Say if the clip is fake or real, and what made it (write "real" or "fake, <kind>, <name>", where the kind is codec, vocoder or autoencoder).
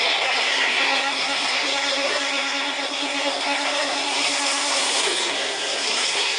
fake, codec, SNAC